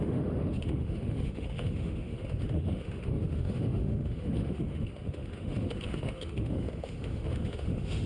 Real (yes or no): no